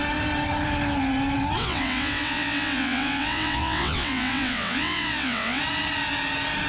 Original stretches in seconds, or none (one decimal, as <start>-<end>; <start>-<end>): 0.0-1.6; 5.6-6.7